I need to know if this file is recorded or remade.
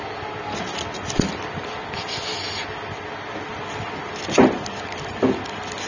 recorded